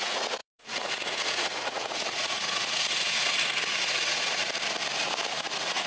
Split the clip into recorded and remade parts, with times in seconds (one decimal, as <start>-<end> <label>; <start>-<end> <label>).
0.0-4.4 remade; 4.4-5.3 recorded; 5.3-5.9 remade